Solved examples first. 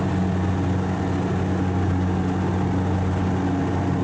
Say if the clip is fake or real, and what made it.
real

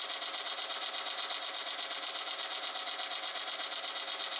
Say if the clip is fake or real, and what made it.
real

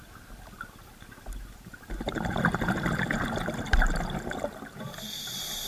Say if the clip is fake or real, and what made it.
real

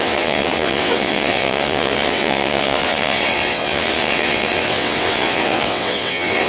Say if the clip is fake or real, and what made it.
fake, vocoder, WaveNeXt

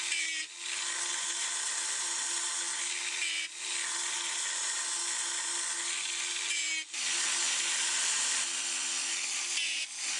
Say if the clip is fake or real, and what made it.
real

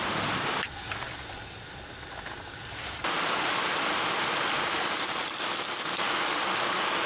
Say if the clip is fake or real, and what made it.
real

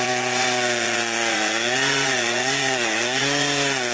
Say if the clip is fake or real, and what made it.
fake, vocoder, Vocos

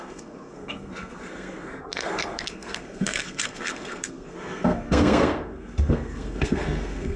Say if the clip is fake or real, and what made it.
fake, codec, SNAC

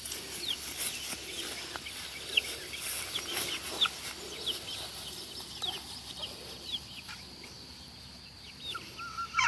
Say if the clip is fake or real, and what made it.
real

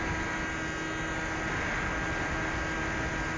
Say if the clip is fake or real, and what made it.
real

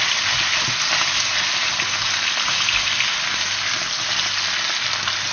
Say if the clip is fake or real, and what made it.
real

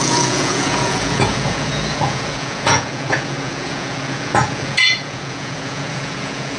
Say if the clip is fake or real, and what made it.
fake, vocoder, Vocos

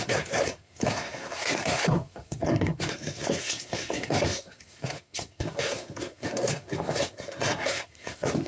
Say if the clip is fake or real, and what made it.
fake, codec, SNAC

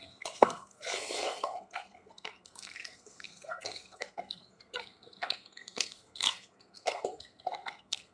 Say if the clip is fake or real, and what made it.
fake, codec, SNAC